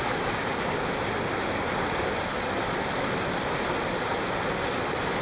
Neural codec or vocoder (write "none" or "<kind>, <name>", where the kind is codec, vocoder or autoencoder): none